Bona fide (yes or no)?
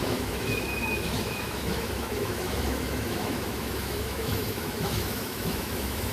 no